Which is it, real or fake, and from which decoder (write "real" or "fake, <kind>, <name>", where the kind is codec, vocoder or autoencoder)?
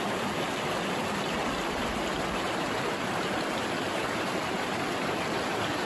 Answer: real